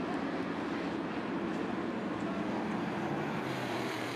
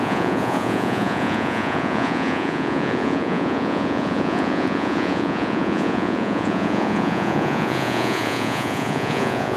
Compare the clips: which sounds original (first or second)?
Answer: first